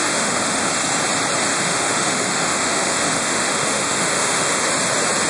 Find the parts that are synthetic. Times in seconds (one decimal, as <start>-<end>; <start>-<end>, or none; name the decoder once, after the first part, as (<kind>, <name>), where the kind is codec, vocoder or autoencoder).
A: 0.0-0.7 (autoencoder, DAC-VAE); 1.5-4.7